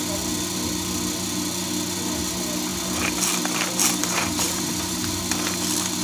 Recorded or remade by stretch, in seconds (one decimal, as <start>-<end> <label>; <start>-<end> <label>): 0.0-4.0 recorded; 4.0-5.2 remade; 5.2-6.0 recorded